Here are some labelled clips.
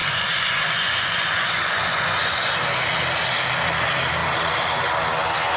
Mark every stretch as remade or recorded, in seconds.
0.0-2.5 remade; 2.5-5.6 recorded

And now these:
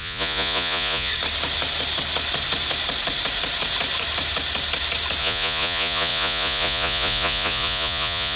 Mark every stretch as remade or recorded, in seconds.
0.0-1.1 remade; 1.1-5.2 recorded; 5.2-8.4 remade

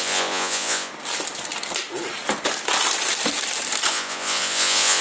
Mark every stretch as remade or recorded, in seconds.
0.0-0.9 remade; 0.9-3.9 recorded; 3.9-5.0 remade

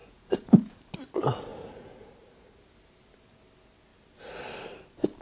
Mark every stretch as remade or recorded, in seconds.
0.0-0.8 remade; 0.8-1.5 recorded; 1.5-2.1 remade; 2.1-5.2 recorded

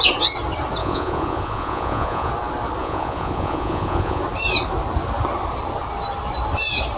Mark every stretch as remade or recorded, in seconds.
0.0-0.8 recorded; 0.8-2.3 remade; 2.3-2.8 recorded; 2.8-4.2 remade; 4.2-7.0 recorded